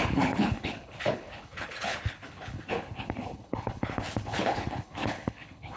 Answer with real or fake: fake